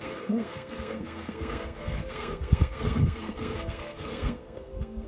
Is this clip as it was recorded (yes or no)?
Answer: no